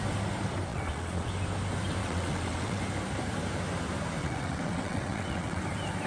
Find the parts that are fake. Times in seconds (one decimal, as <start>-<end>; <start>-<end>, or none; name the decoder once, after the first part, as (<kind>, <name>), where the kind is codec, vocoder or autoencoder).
0.7-1.3 (vocoder, WaveNeXt); 2.0-2.8; 4.2-5.6